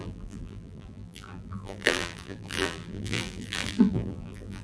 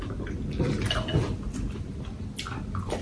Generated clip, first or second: first